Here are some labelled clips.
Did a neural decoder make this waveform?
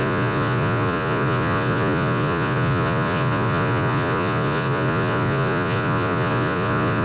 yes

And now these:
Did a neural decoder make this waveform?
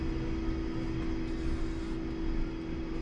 no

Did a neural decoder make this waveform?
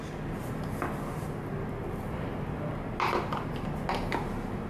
no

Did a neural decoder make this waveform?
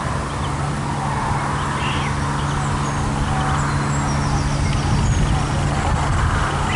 no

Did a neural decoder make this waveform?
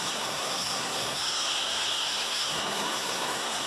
yes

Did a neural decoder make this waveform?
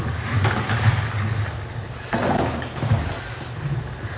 no